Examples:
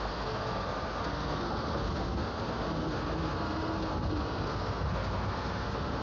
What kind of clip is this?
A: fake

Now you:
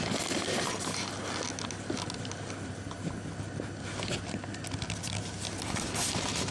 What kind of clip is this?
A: real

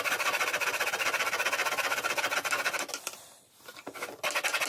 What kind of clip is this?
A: real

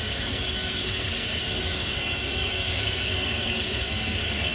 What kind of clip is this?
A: fake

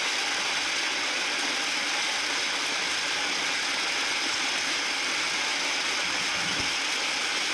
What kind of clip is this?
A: real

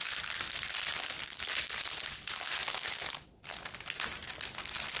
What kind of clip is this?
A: real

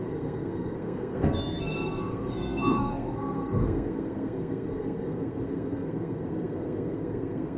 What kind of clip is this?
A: fake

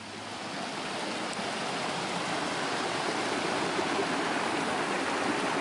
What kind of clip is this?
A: real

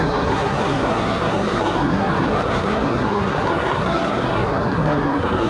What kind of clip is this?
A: fake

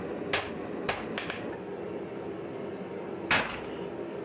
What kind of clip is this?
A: real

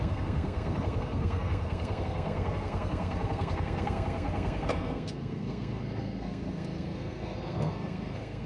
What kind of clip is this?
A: fake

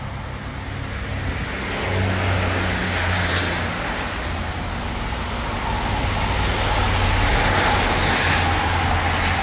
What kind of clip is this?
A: real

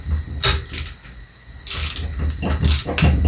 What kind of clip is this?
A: real